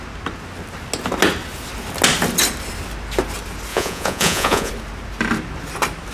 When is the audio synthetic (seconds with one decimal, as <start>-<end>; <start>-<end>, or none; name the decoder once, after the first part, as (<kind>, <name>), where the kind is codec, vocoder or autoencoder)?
3.7-4.7 (vocoder, Vocos)